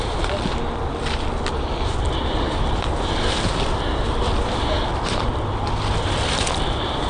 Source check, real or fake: real